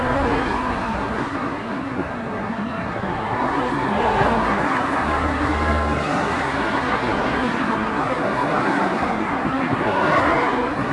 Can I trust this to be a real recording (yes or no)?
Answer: no